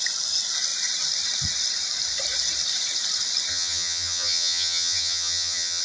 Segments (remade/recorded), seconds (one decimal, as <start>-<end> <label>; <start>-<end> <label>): 0.0-3.5 recorded; 3.5-5.8 remade